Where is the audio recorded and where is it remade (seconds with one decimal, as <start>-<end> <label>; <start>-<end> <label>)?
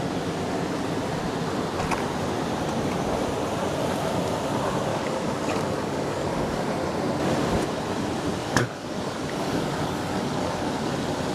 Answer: 0.0-4.9 recorded; 4.9-6.7 remade; 6.7-8.4 recorded; 8.4-10.9 remade; 10.9-11.3 recorded